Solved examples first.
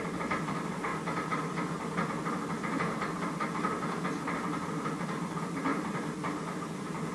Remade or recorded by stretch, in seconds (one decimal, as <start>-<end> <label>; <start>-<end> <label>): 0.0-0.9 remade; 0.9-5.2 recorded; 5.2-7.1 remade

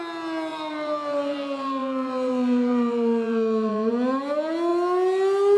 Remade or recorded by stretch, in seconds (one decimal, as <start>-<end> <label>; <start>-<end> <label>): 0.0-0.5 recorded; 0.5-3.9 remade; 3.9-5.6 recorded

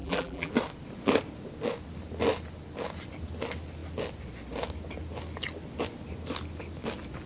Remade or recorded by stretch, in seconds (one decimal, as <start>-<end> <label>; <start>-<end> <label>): 0.0-0.5 remade; 0.5-7.3 recorded

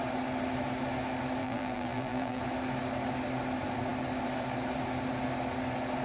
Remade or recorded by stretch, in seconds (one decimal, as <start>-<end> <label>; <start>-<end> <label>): 0.0-1.4 recorded; 1.4-2.4 remade; 2.4-6.0 recorded

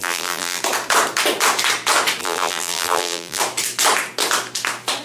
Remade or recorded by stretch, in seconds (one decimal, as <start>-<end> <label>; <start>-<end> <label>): 0.0-0.6 remade; 0.6-2.2 recorded; 2.2-3.4 remade; 3.4-5.0 recorded

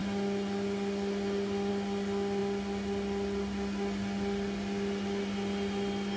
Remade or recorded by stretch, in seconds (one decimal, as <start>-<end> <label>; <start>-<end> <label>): 0.0-6.2 recorded

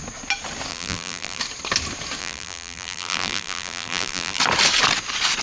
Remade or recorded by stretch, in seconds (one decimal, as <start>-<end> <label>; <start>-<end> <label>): 0.0-0.7 recorded; 0.7-1.4 remade; 1.4-2.2 recorded; 2.2-4.4 remade; 4.4-5.4 recorded